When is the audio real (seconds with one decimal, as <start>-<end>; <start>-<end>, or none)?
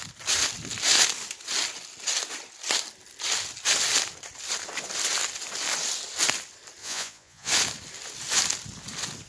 0.0-6.8; 7.5-9.3